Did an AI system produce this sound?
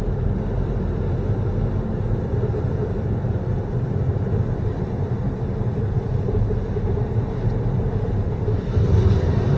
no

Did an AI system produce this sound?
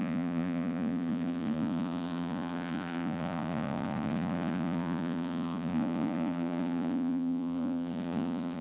yes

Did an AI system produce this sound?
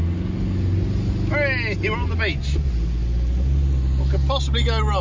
no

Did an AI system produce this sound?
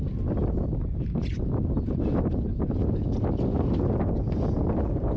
no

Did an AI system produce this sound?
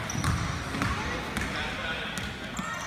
no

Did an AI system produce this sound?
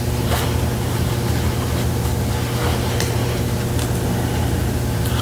no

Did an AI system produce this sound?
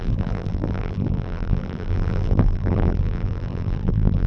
yes